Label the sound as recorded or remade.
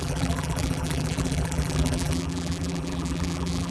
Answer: remade